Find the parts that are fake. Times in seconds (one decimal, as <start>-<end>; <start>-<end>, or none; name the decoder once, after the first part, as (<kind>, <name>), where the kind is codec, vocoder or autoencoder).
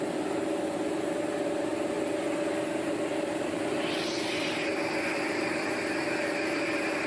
none